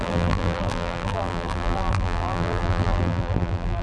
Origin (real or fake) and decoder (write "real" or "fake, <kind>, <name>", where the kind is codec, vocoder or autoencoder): fake, vocoder, BigVGAN v2